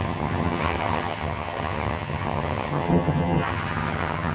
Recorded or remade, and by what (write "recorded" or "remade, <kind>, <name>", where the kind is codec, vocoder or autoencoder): remade, vocoder, HiFi-GAN